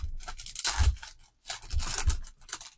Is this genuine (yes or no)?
yes